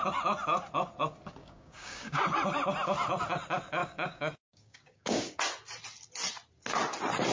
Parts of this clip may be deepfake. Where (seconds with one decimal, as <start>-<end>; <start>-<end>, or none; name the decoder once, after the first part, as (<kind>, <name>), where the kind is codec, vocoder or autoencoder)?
1.4-2.2 (codec, DAC); 3.8-5.4